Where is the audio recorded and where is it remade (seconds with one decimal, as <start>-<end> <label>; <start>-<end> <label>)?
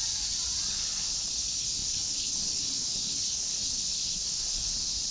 0.0-0.7 recorded; 0.7-5.1 remade